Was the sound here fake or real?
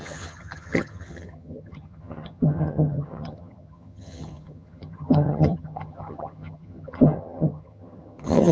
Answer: fake